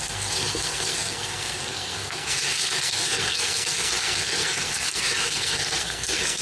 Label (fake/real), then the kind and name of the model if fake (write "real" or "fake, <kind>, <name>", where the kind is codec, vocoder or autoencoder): fake, codec, SNAC